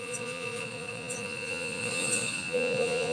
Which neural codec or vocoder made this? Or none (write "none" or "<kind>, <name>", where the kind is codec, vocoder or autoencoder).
vocoder, Vocos